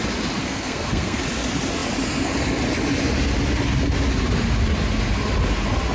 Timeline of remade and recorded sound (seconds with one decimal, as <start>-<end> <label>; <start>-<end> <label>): 0.0-0.4 recorded; 0.4-1.2 remade; 1.2-5.9 recorded